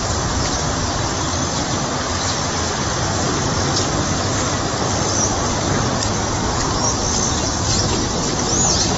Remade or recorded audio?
recorded